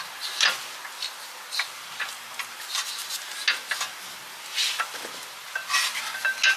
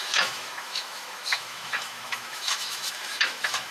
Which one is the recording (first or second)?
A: first